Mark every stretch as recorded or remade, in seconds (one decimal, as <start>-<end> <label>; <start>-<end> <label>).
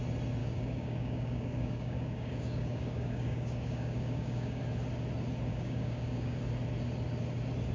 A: 0.0-0.4 recorded; 0.4-4.6 remade; 4.6-5.5 recorded; 5.5-6.4 remade; 6.4-7.7 recorded